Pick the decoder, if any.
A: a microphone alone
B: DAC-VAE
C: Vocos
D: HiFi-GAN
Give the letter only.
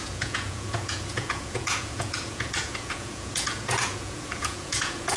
C